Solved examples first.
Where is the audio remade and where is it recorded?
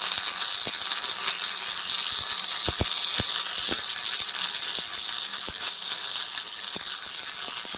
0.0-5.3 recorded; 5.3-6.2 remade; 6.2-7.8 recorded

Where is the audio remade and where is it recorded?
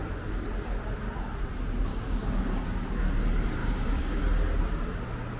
0.0-1.9 recorded; 1.9-3.0 remade; 3.0-3.6 recorded; 3.6-4.2 remade; 4.2-5.4 recorded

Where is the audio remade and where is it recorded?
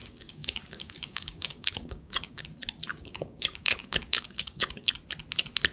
0.0-2.4 remade; 2.4-2.9 recorded; 2.9-4.9 remade; 4.9-5.7 recorded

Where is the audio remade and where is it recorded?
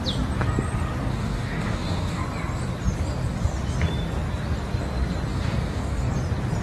0.0-1.1 recorded; 1.1-2.2 remade; 2.2-5.3 recorded; 5.3-6.1 remade; 6.1-6.6 recorded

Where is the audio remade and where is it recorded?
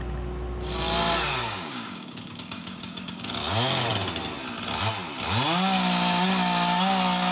0.0-1.4 recorded; 1.4-3.3 remade; 3.3-7.3 recorded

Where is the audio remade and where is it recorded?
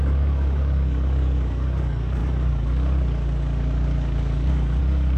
0.0-5.2 remade